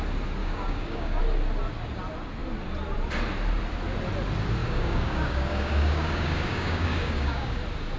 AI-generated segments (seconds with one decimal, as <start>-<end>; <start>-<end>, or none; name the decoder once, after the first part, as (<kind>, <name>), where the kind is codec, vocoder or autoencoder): 0.4-1.2 (codec, DAC); 4.6-7.6